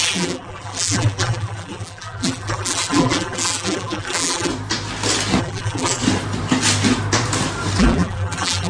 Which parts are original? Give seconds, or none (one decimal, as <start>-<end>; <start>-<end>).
4.5-5.4; 6.0-7.8